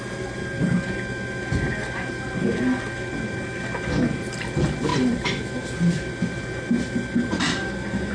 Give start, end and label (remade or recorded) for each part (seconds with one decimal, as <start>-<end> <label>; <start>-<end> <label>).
0.0-8.1 recorded